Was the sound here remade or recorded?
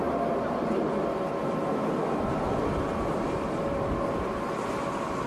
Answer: recorded